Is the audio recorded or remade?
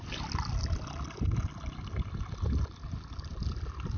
recorded